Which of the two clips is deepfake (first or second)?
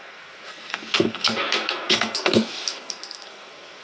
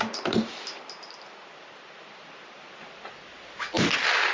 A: first